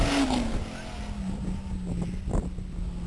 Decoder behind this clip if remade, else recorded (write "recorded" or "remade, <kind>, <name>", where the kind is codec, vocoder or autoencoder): recorded